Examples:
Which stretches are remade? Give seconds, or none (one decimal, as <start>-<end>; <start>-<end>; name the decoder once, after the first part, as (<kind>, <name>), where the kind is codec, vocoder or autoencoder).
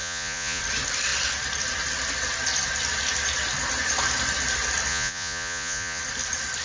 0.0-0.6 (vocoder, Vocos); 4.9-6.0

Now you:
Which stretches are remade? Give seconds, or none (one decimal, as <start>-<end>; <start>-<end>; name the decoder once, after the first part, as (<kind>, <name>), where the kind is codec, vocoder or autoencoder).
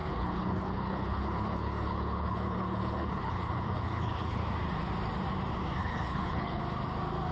0.0-4.4 (codec, HILCodec); 5.8-6.6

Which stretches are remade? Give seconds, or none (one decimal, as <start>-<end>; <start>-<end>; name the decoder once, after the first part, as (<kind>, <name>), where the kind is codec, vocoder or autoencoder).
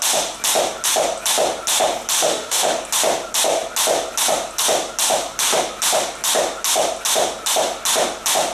2.2-2.7 (autoencoder, DAC-VAE)